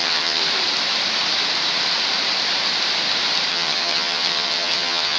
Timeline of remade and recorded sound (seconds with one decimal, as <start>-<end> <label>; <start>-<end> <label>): 0.0-0.4 remade; 0.4-3.5 recorded; 3.5-5.2 remade